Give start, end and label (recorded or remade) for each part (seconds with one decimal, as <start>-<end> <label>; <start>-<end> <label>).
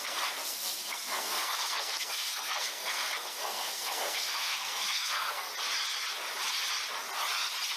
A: 0.0-5.5 remade; 5.5-7.8 recorded